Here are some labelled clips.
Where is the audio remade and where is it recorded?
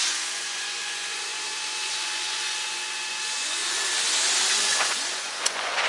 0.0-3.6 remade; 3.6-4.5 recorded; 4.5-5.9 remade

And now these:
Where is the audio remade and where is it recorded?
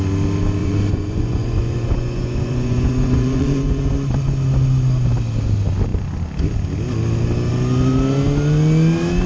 0.0-0.6 recorded; 0.6-3.9 remade; 3.9-9.3 recorded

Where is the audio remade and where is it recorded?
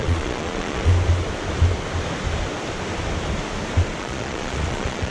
0.0-0.9 remade; 0.9-4.0 recorded; 4.0-5.1 remade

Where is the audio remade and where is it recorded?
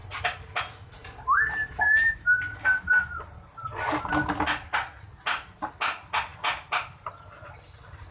0.0-1.6 recorded; 1.6-2.9 remade; 2.9-8.1 recorded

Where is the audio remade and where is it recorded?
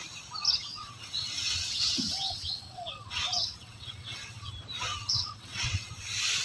0.0-0.7 recorded; 0.7-4.5 remade; 4.5-5.0 recorded; 5.0-5.9 remade; 5.9-6.4 recorded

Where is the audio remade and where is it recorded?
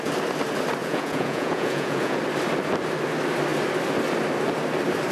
0.0-0.8 recorded; 0.8-2.2 remade; 2.2-5.1 recorded